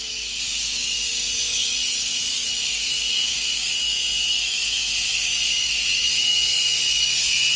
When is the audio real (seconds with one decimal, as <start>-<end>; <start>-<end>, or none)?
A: none